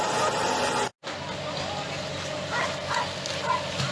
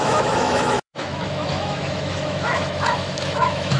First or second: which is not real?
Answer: second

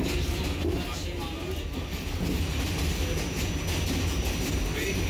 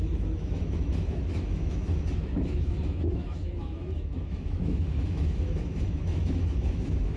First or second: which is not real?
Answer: second